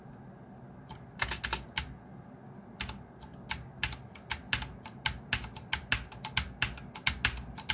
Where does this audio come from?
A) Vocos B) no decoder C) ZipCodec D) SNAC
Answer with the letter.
B